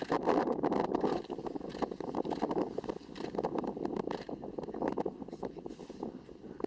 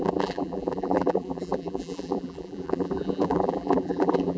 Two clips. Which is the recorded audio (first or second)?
first